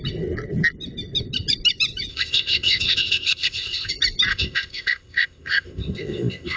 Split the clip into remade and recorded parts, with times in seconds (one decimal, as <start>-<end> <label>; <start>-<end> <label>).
0.0-2.1 recorded; 2.1-3.9 remade; 3.9-4.3 recorded; 4.3-6.6 remade